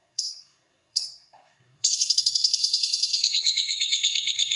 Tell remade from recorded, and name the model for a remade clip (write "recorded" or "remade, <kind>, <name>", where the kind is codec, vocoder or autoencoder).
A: remade, codec, SNAC